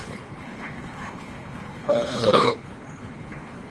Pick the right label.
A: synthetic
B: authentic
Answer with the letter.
A